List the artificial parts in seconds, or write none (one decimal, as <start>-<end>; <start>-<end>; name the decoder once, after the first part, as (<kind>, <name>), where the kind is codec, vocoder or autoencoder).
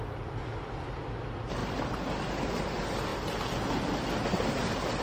none